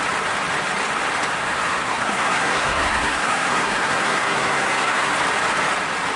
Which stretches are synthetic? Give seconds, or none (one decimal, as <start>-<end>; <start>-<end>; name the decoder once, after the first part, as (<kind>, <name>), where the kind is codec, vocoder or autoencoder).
1.4-5.1 (codec, SNAC)